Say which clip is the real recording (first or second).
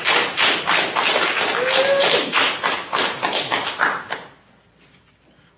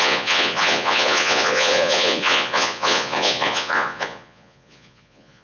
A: first